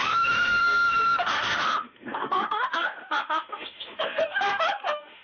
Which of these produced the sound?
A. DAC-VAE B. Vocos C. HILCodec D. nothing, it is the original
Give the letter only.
A